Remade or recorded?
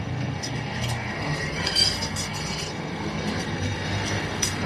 remade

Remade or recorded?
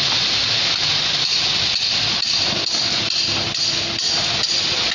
recorded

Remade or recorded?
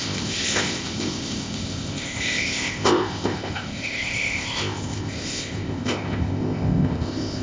remade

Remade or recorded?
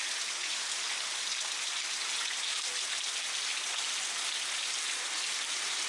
recorded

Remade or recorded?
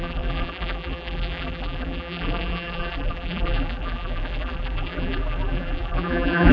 remade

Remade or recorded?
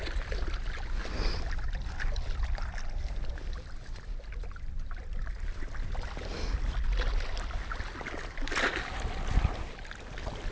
recorded